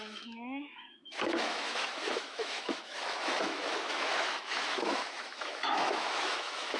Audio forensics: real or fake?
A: fake